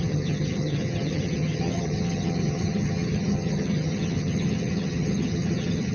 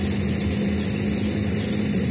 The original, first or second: second